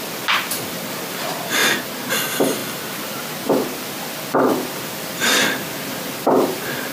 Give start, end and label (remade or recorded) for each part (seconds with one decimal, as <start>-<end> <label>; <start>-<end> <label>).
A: 0.0-1.6 remade; 1.6-2.1 recorded; 2.1-2.6 remade; 2.6-4.7 recorded; 4.7-6.9 remade